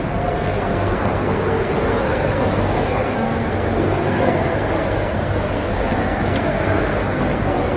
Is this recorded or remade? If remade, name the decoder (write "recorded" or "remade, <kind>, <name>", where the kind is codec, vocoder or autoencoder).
remade, codec, SNAC